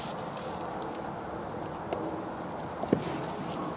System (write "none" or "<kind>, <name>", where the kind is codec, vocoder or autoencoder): none